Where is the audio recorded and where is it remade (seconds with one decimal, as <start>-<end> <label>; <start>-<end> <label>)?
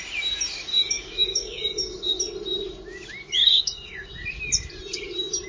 0.0-0.7 recorded; 0.7-2.2 remade; 2.2-3.4 recorded; 3.4-4.1 remade; 4.1-5.5 recorded